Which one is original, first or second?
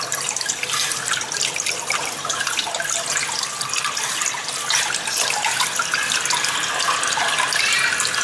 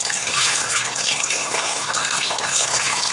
first